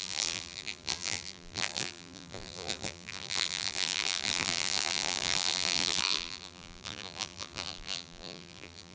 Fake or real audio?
fake